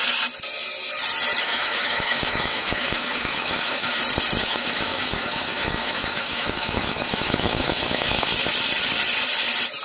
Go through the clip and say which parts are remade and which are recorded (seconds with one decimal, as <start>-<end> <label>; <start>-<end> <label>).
0.0-1.4 recorded; 1.4-4.0 remade; 4.0-4.4 recorded; 4.4-8.2 remade; 8.2-9.8 recorded